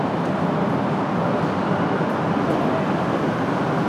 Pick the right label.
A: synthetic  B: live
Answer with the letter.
B